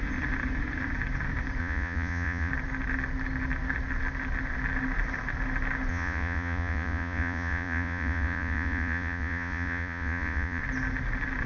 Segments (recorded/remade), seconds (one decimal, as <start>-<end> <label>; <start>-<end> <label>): 0.0-1.6 recorded; 1.6-2.5 remade; 2.5-5.9 recorded; 5.9-10.6 remade; 10.6-11.5 recorded